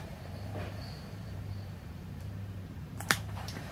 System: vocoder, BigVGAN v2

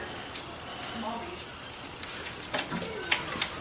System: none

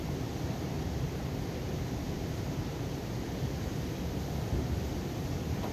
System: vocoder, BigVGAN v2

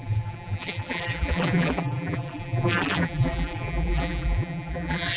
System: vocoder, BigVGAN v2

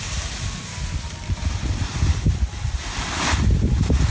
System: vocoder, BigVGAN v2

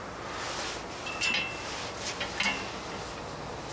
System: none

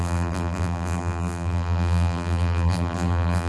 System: vocoder, BigVGAN v2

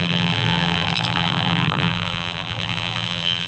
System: vocoder, BigVGAN v2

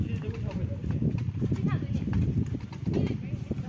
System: vocoder, BigVGAN v2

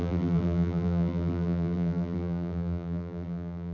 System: vocoder, BigVGAN v2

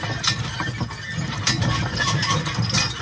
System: none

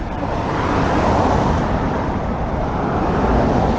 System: vocoder, BigVGAN v2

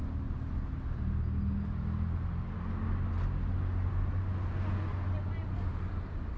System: none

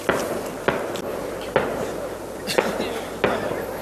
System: none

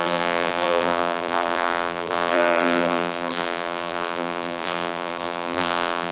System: vocoder, BigVGAN v2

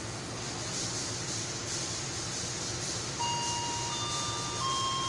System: none